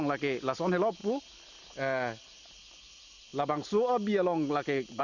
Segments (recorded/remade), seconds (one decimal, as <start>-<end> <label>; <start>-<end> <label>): 0.0-5.0 recorded